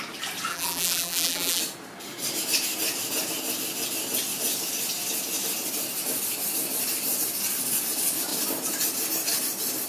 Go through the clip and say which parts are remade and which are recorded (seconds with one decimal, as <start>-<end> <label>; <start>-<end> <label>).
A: 0.0-0.5 recorded; 0.5-1.6 remade; 1.6-9.9 recorded